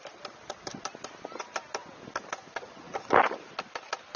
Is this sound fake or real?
real